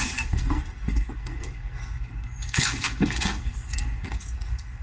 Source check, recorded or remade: remade